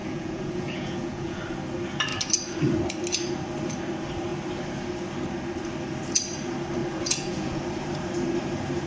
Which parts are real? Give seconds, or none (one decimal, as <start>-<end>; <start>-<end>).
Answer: 1.4-6.8; 7.6-8.9